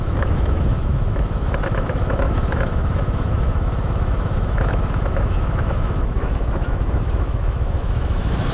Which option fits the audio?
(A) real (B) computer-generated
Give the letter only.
B